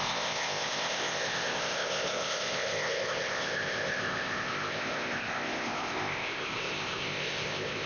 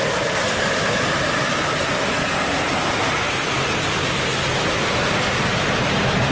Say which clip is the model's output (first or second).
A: first